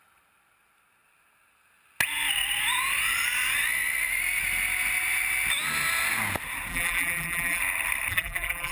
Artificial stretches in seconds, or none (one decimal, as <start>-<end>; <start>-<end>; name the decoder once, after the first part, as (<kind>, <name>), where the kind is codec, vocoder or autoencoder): 6.7-7.6 (vocoder, BigVGAN v2); 8.1-8.7